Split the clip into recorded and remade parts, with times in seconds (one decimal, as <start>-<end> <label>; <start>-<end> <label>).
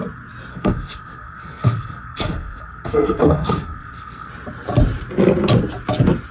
0.0-0.5 recorded; 0.5-4.3 remade; 4.3-6.3 recorded